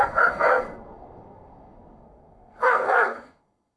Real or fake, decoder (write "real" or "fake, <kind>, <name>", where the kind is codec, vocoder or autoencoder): fake, codec, SNAC